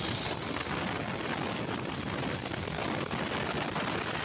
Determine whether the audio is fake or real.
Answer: real